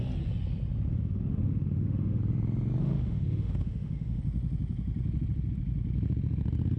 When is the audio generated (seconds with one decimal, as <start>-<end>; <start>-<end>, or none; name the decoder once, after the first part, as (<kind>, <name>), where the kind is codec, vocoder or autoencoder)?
0.9-2.2 (autoencoder, DAC-VAE); 2.8-4.2